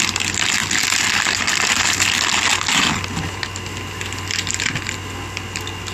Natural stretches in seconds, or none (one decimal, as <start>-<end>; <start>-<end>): 0.0-5.9